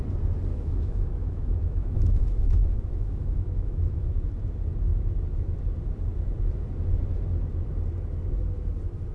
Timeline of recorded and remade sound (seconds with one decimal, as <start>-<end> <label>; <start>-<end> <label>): 0.0-0.5 recorded; 0.5-4.3 remade; 4.3-9.1 recorded